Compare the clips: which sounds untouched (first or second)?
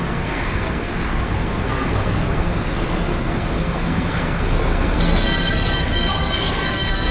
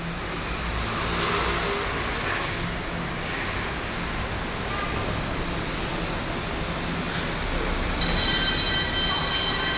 second